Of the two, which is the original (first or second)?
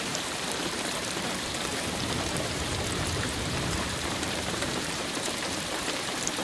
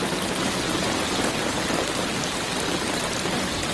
second